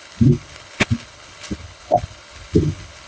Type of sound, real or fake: fake